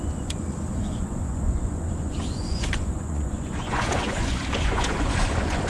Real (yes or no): no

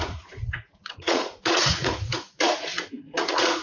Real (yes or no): no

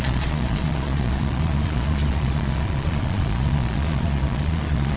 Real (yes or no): no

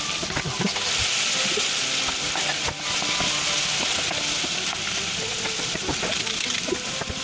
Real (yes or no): yes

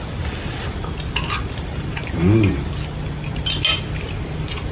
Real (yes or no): yes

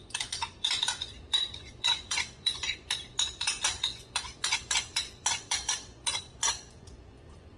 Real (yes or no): no